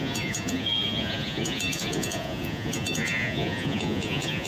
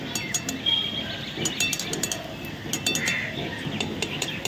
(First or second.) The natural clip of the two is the second